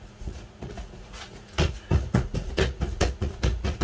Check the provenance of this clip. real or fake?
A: fake